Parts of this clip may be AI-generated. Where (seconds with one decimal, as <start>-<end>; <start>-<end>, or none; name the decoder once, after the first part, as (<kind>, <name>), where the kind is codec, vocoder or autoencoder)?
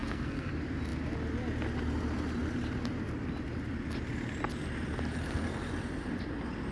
0.0-0.5 (codec, SNAC)